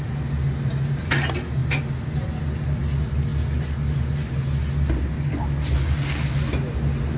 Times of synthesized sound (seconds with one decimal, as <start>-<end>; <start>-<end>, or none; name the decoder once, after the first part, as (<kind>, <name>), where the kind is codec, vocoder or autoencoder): none